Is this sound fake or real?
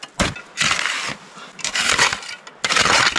real